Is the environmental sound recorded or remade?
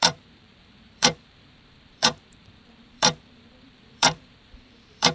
remade